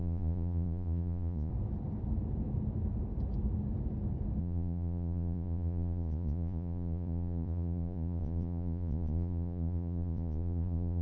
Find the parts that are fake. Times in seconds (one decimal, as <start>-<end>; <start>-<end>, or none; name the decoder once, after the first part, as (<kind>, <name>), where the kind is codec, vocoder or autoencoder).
0.0-1.5 (vocoder, Vocos); 4.4-11.0